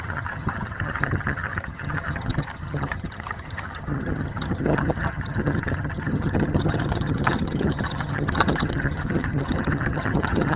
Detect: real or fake fake